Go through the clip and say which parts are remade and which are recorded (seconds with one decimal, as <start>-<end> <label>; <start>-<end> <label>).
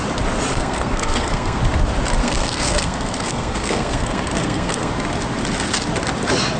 0.0-0.5 recorded; 0.5-1.6 remade; 1.6-2.2 recorded; 2.2-4.9 remade; 4.9-6.6 recorded